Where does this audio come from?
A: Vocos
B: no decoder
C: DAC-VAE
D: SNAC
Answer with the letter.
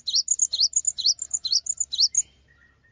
B